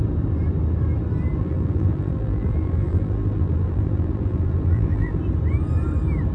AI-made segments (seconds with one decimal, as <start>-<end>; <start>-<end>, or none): 1.4-5.2